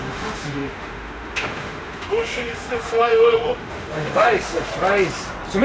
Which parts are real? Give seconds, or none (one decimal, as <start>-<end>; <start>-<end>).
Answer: 4.7-5.6